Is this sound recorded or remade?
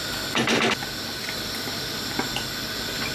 recorded